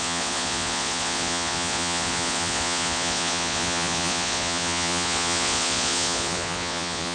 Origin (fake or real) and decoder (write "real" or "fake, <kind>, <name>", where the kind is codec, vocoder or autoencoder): fake, vocoder, Vocos